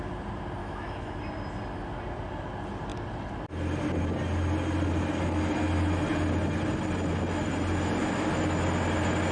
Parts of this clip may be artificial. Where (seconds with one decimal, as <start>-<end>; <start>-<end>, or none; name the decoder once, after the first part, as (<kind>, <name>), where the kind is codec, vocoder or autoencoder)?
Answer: 0.6-1.2 (autoencoder, DAC-VAE)